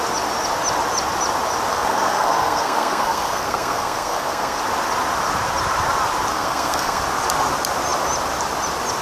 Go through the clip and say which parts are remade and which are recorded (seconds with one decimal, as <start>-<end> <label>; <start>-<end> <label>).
0.0-1.7 recorded; 1.7-4.6 remade; 4.6-6.3 recorded; 6.3-7.0 remade; 7.0-9.0 recorded